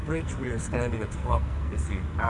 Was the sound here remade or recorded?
remade